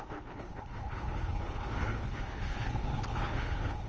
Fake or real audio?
fake